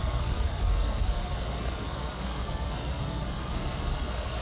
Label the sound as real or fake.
fake